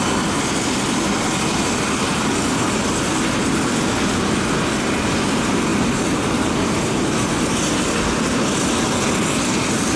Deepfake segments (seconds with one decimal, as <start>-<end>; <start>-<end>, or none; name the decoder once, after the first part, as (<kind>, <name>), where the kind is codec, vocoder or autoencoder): none